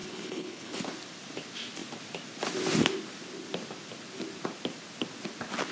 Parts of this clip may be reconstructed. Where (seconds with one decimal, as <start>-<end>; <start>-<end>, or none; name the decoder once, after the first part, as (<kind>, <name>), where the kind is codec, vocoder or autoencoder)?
0.0-0.8 (codec, HILCodec)